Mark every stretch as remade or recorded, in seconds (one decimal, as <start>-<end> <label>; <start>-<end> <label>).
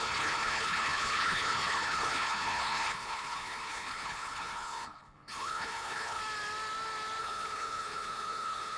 0.0-6.2 remade; 6.2-7.2 recorded; 7.2-8.8 remade